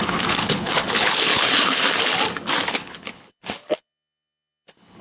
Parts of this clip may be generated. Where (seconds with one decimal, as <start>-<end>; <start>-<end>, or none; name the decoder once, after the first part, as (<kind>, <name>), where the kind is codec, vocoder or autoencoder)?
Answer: 0.0-1.8 (codec, HILCodec); 2.7-5.0